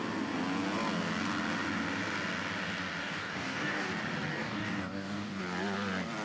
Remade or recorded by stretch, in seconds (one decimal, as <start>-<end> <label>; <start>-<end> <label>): 0.0-3.0 recorded; 3.0-3.9 remade; 3.9-4.3 recorded; 4.3-5.4 remade; 5.4-6.2 recorded